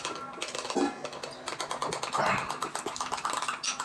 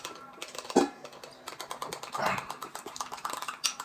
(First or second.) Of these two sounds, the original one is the first